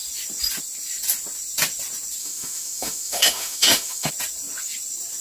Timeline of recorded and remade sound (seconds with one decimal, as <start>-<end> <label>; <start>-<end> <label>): 0.0-2.2 recorded; 2.2-4.1 remade; 4.1-5.2 recorded